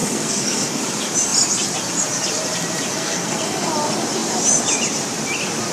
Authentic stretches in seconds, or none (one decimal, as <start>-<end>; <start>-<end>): 0.8-2.9; 3.7-5.7